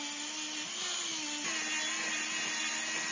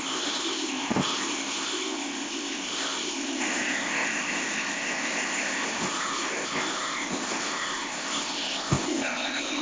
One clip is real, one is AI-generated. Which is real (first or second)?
first